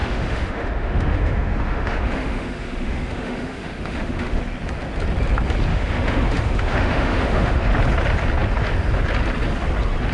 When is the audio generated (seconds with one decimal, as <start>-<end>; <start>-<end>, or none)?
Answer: 0.0-4.4; 5.7-7.7